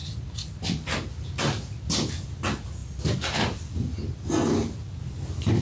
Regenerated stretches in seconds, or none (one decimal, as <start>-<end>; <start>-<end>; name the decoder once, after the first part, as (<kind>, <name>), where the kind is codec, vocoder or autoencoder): none